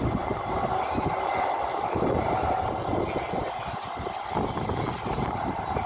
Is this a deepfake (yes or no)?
no